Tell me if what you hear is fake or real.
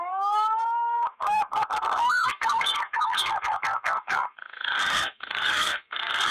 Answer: fake